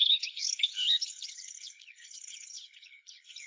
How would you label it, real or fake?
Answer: fake